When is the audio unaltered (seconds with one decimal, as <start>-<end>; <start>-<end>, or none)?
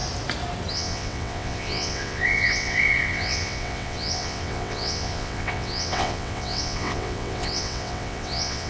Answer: 0.0-0.7